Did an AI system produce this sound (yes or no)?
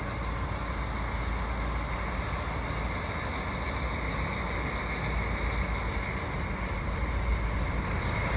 no